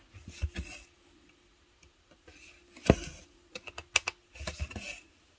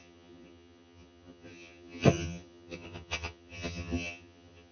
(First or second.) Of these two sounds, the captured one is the first